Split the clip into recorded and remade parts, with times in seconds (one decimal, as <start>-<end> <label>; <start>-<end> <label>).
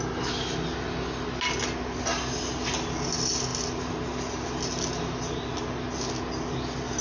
0.0-7.0 recorded